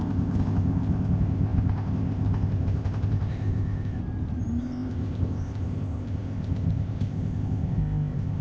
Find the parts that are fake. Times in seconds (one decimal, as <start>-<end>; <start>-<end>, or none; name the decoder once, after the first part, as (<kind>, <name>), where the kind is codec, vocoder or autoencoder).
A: 0.0-4.0 (codec, ZipCodec); 4.6-8.4